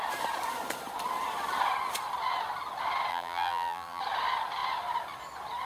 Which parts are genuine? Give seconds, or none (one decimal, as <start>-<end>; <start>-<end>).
0.0-3.1; 4.0-5.6